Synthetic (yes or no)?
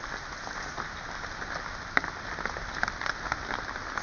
no